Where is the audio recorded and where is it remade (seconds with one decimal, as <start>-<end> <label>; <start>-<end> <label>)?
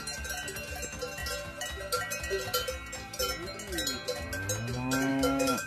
0.0-5.1 recorded; 5.1-5.7 remade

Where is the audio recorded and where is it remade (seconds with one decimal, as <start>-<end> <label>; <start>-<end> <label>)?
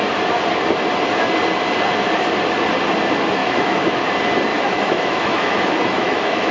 0.0-3.4 recorded; 3.4-4.0 remade; 4.0-4.5 recorded; 4.5-6.5 remade